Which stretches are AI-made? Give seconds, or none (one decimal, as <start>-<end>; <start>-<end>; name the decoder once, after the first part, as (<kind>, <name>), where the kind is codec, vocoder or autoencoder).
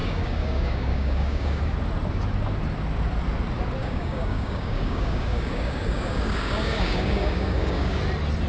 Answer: 0.0-1.6 (codec, DAC); 3.8-8.0